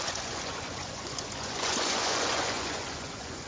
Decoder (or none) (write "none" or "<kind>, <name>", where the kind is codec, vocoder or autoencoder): vocoder, Vocos